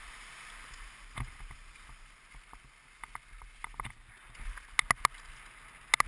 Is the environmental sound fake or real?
real